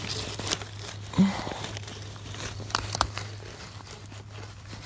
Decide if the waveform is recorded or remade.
recorded